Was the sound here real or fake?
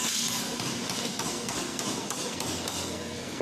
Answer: fake